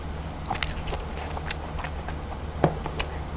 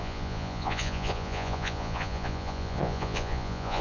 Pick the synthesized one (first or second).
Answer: second